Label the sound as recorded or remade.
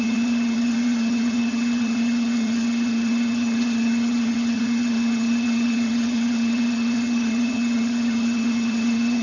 remade